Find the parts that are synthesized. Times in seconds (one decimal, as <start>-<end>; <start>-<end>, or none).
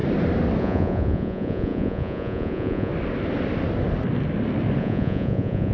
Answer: 0.6-2.9; 4.8-5.7